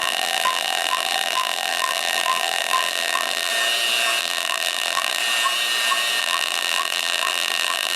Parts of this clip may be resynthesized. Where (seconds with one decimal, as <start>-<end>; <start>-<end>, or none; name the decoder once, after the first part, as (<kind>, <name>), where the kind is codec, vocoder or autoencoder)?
0.0-3.5 (vocoder, BigVGAN v2); 4.2-5.2; 6.2-8.0